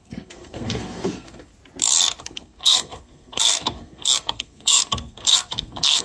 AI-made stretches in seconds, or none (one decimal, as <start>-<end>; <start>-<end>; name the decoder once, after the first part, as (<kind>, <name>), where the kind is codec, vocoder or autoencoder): 0.0-1.5 (codec, SNAC); 2.2-6.0